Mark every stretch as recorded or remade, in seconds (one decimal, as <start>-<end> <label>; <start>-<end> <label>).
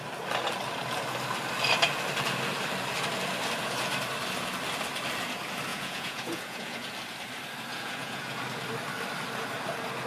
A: 0.0-5.7 recorded; 5.7-6.9 remade; 6.9-7.7 recorded; 7.7-8.4 remade; 8.4-10.1 recorded